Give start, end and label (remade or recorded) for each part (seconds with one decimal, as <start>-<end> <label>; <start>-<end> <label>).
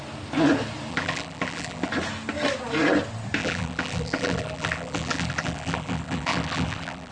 0.0-0.9 recorded; 0.9-1.9 remade; 1.9-3.4 recorded; 3.4-7.1 remade